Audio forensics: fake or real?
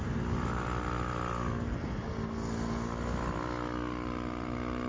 real